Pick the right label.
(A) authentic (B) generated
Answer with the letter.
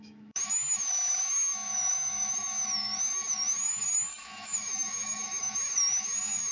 B